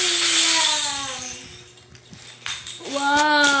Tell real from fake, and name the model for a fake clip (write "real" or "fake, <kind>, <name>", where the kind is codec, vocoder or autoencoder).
real